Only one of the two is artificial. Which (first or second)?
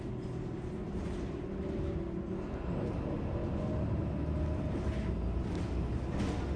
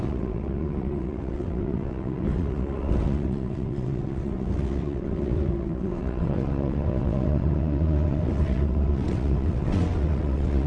second